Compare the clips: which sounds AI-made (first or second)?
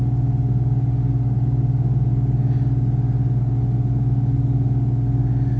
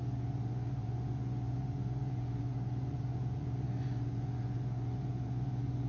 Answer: second